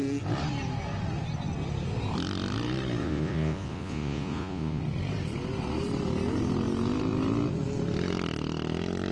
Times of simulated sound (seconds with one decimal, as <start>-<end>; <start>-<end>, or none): 3.0-4.8